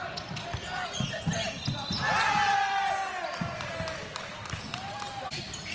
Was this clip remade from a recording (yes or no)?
no